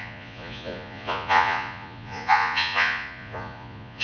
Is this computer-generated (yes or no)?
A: yes